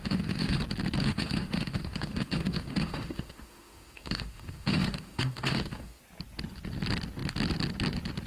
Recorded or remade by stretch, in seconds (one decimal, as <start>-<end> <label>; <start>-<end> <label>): 0.0-0.6 remade; 0.6-1.0 recorded; 1.0-6.0 remade; 6.0-8.3 recorded